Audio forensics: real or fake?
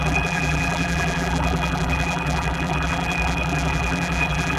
fake